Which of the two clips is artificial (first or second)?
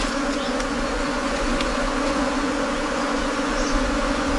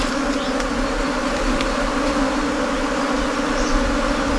first